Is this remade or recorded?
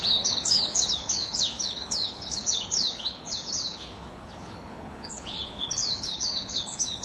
remade